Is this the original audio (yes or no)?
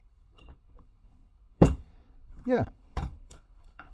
no